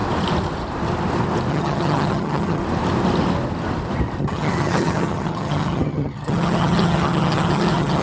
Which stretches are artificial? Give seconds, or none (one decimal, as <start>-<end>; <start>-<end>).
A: 1.5-2.6; 4.2-8.0